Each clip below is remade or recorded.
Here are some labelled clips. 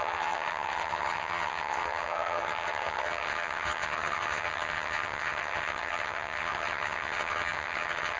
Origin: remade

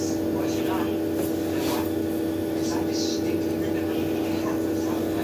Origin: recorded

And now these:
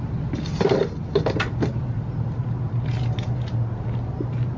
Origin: recorded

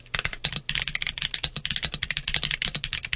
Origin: recorded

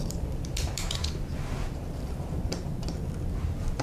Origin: remade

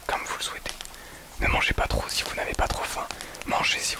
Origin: recorded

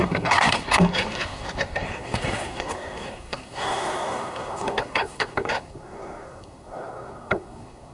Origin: remade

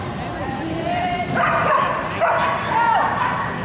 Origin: recorded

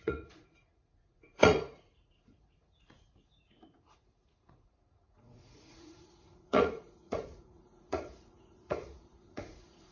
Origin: remade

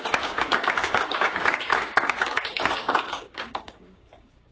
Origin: remade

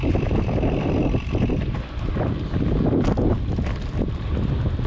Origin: recorded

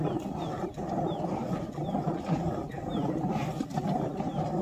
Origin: recorded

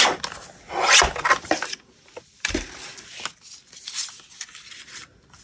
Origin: recorded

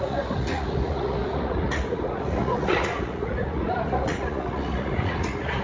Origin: remade